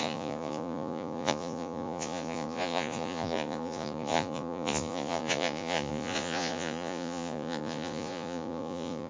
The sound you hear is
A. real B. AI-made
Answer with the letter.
B